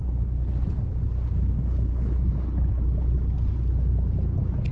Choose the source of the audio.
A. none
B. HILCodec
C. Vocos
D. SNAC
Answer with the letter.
A